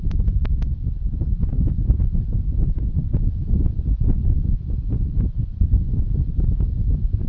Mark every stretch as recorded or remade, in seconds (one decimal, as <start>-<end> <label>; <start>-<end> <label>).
0.0-7.3 recorded

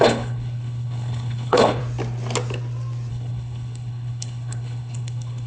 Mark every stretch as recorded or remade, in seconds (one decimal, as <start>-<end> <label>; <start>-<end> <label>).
0.0-1.8 remade; 1.8-3.1 recorded; 3.1-5.5 remade

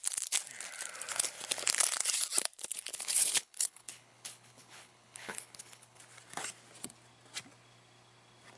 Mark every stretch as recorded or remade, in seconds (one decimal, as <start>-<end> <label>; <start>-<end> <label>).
0.0-2.9 recorded; 2.9-6.0 remade; 6.0-8.6 recorded

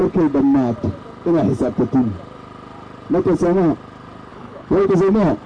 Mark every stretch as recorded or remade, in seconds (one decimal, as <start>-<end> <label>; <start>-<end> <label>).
0.0-4.3 recorded; 4.3-4.9 remade; 4.9-5.5 recorded

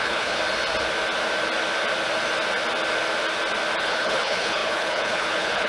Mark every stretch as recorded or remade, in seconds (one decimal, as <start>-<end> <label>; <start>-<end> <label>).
0.0-0.4 remade; 0.4-3.8 recorded; 3.8-5.7 remade

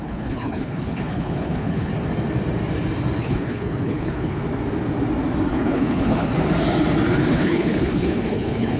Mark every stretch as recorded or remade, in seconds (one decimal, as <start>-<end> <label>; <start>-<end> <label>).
0.0-1.9 remade; 1.9-3.2 recorded; 3.2-4.4 remade; 4.4-5.5 recorded; 5.5-6.2 remade; 6.2-7.3 recorded; 7.3-8.8 remade

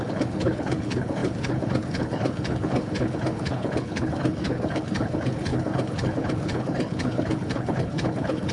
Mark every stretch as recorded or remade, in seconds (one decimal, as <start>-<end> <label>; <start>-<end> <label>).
0.0-8.5 remade